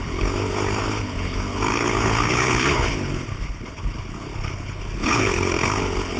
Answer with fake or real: fake